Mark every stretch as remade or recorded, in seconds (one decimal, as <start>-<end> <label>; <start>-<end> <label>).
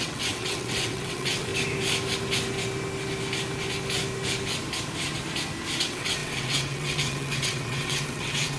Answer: 0.0-1.5 remade; 1.5-5.8 recorded; 5.8-8.6 remade